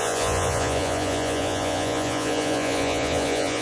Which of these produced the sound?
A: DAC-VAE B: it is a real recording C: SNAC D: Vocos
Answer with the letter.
D